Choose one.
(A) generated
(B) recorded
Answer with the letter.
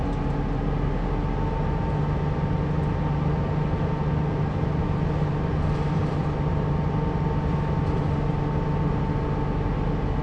B